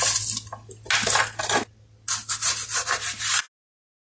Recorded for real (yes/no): yes